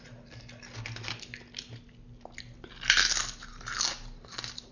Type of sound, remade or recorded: recorded